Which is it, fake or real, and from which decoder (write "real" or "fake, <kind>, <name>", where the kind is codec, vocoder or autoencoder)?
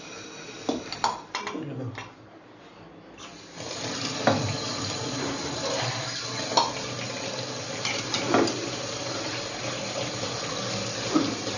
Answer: real